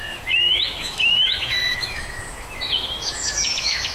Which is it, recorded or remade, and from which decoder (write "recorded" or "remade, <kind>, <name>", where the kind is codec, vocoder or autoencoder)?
remade, autoencoder, DAC-VAE